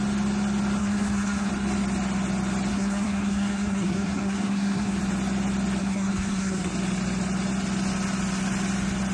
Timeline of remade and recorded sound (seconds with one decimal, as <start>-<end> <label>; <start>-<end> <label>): 0.0-0.8 recorded; 0.8-1.5 remade; 1.5-2.7 recorded; 2.7-5.0 remade; 5.0-5.8 recorded; 5.8-6.7 remade; 6.7-9.1 recorded